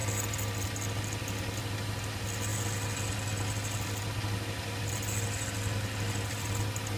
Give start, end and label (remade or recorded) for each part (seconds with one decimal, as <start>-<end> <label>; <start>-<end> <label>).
0.0-7.0 recorded